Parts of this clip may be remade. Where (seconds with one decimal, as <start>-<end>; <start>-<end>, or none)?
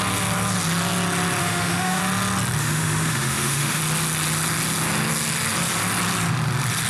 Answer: 1.4-2.0; 2.6-3.8